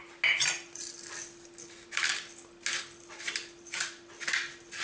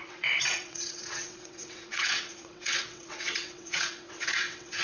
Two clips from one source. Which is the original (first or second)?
first